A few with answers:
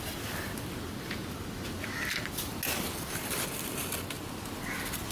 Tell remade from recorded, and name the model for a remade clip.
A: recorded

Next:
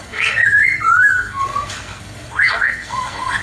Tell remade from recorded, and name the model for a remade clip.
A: remade, codec, SNAC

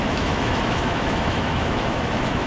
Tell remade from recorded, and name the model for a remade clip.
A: remade, autoencoder, DAC-VAE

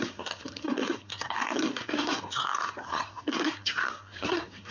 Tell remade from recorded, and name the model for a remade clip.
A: remade, codec, SNAC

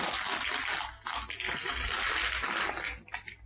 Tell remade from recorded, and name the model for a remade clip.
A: recorded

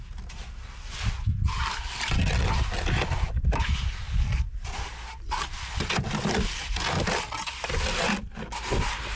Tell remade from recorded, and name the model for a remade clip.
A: recorded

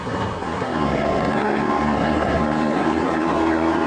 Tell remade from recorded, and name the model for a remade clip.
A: remade, codec, SNAC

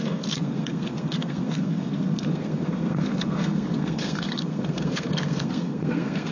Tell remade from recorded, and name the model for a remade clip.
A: remade, codec, SNAC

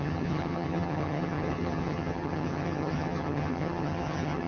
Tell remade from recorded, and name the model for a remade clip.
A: remade, vocoder, HiFi-GAN